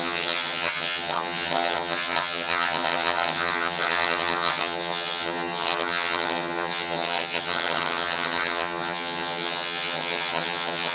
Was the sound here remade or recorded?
remade